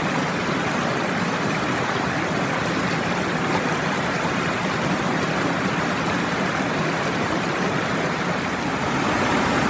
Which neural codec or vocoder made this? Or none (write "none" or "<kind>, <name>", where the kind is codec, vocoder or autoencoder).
none